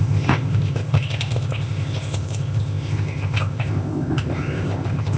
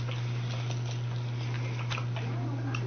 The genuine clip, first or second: second